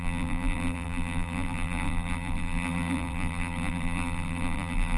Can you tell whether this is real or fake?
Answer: fake